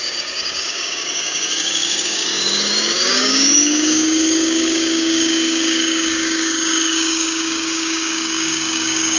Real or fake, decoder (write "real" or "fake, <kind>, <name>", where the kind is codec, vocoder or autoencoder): fake, codec, DAC